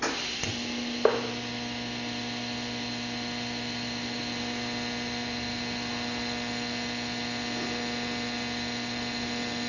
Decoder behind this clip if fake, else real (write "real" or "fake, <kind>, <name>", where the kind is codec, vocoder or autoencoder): real